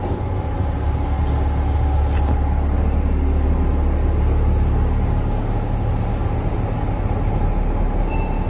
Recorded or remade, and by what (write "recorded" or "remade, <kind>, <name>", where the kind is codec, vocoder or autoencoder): recorded